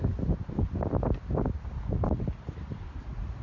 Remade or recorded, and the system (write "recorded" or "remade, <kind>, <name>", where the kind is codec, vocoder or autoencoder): recorded